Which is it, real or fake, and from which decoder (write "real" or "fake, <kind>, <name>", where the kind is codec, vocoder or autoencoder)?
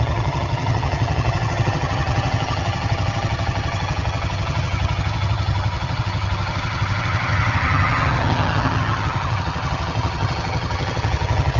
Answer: fake, vocoder, HiFi-GAN